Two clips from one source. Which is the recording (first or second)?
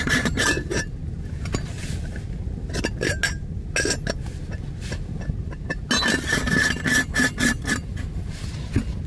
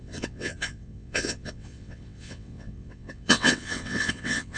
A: first